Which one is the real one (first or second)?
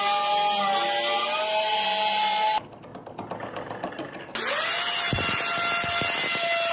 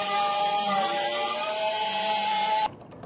first